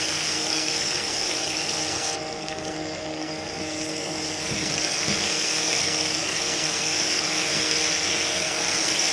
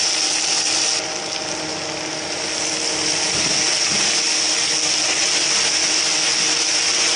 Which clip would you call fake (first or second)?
first